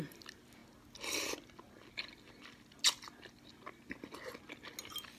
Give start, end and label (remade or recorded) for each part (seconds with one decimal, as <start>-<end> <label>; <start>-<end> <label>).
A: 0.0-5.2 recorded